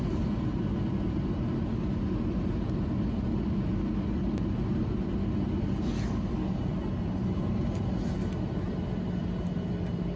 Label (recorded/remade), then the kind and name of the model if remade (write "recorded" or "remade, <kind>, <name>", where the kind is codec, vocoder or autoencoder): recorded